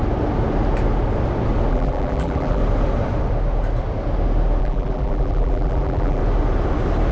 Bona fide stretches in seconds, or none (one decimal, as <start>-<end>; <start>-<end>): 0.0-1.7; 2.6-4.6; 6.2-7.1